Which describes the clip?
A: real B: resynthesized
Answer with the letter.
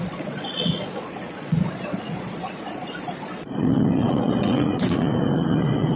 B